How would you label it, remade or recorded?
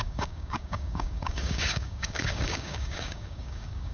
remade